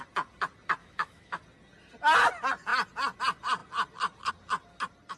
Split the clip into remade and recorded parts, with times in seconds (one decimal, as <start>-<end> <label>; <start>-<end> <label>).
0.0-0.8 recorded; 0.8-1.4 remade; 1.4-5.2 recorded